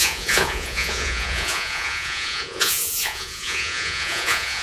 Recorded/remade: remade